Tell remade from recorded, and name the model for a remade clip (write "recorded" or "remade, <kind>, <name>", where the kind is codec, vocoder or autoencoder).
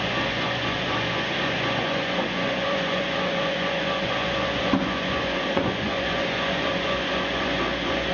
remade, vocoder, Vocos